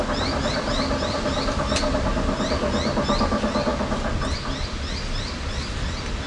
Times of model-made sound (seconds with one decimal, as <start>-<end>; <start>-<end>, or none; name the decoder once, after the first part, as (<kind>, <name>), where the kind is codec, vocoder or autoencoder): none